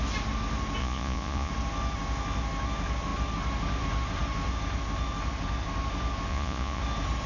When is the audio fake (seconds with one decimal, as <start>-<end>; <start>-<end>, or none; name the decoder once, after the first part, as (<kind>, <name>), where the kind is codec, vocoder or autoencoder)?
0.8-1.5 (vocoder, Vocos); 6.3-6.8